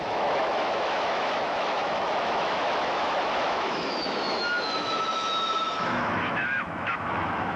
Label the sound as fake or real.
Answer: fake